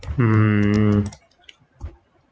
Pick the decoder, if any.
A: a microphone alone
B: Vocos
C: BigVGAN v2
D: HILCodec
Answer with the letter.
C